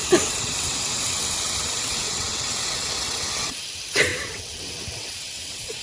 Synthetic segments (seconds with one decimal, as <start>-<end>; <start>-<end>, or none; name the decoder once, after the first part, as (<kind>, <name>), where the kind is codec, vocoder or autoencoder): 0.0-5.8 (vocoder, WaveNeXt)

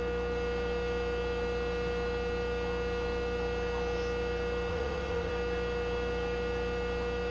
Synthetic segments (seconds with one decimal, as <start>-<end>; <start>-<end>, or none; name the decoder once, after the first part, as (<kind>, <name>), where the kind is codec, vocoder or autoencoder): 4.7-5.3 (vocoder, WaveNeXt)